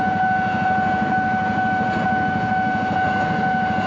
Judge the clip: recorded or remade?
remade